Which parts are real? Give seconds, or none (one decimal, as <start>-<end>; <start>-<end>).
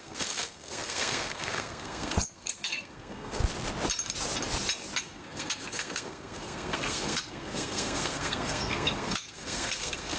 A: 3.4-5.0